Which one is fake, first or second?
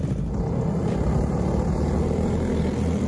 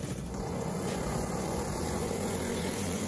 second